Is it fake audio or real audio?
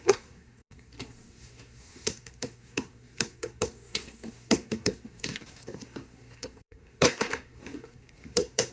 fake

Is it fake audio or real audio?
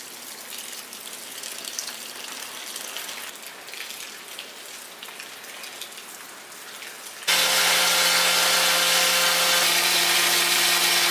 real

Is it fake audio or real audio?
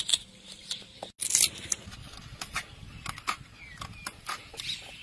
real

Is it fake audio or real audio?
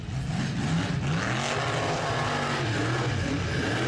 real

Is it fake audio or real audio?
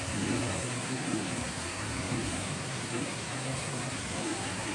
fake